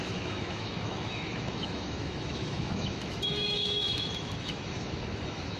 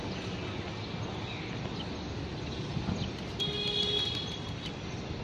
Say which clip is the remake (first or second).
first